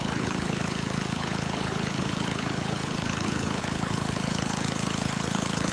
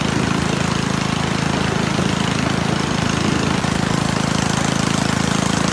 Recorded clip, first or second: second